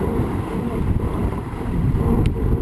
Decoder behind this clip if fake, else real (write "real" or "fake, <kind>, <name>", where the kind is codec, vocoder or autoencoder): fake, vocoder, BigVGAN v2